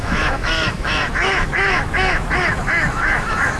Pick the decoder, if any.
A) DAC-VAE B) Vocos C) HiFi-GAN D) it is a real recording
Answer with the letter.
A